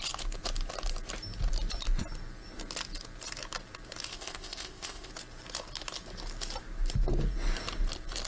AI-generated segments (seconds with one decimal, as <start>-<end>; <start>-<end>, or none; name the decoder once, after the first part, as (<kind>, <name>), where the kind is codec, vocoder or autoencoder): 4.1-5.1 (codec, ZipCodec)